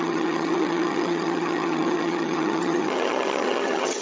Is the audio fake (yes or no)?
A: yes